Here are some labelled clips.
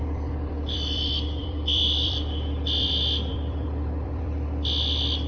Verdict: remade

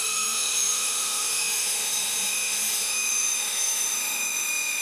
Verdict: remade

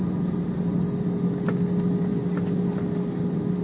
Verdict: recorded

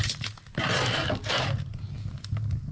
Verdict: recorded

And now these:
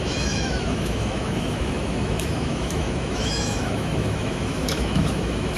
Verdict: remade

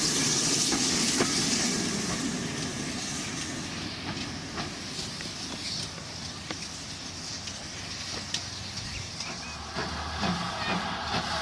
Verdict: recorded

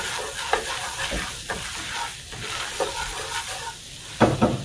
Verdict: recorded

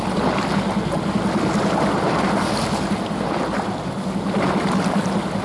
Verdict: recorded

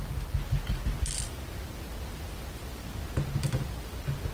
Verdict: recorded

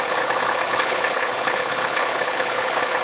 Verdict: remade